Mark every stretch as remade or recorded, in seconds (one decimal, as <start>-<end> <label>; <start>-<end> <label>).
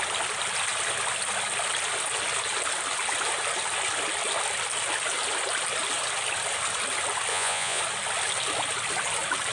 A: 0.0-7.3 recorded; 7.3-7.8 remade; 7.8-9.5 recorded